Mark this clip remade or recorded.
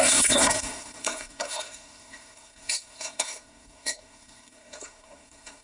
remade